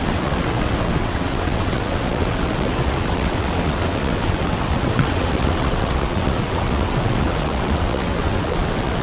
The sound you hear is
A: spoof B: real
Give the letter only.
A